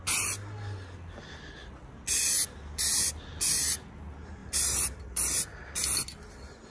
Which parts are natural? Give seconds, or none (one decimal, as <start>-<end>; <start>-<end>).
0.0-4.4; 5.0-6.7